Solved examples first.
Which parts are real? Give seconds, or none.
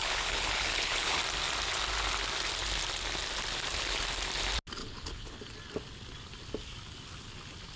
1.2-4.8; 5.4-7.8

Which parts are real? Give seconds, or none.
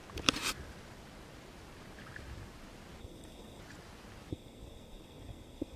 0.0-3.0; 3.6-4.3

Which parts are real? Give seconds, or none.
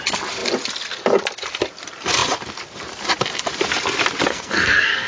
0.0-4.3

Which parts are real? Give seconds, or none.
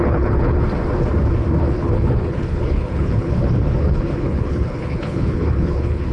0.6-1.6